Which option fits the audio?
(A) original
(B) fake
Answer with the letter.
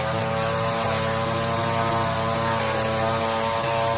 A